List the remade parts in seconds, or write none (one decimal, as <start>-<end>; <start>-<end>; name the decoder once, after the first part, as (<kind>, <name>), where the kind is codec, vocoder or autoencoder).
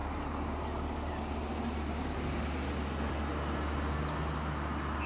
none